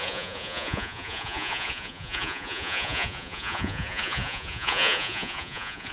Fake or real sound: fake